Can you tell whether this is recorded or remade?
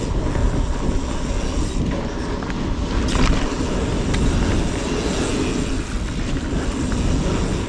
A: recorded